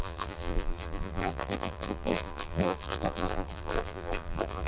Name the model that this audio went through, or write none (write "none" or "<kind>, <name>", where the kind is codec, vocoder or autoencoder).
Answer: vocoder, BigVGAN v2